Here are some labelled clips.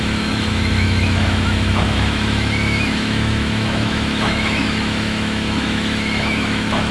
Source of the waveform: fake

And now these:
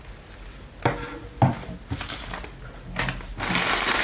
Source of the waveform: real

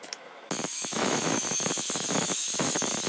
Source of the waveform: fake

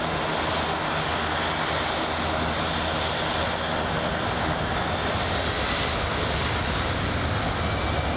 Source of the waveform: real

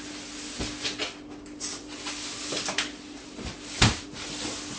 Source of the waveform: real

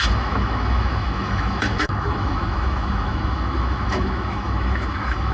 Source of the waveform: fake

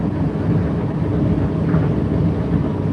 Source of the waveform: real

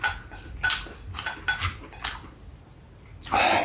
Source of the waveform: real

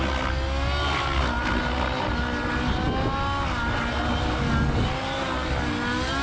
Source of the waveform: real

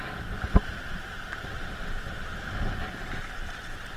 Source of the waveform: real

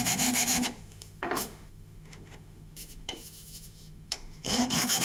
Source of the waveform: fake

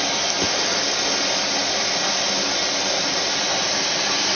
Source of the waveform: real